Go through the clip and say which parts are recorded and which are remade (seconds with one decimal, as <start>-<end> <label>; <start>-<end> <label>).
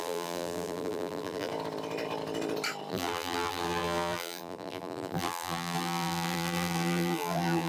0.0-1.5 remade; 1.5-2.9 recorded; 2.9-7.7 remade